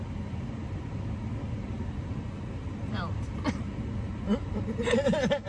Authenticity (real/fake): real